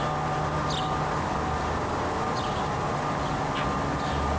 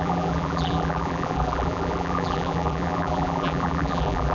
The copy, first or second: second